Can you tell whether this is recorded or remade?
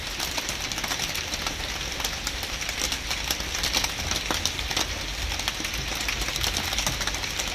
remade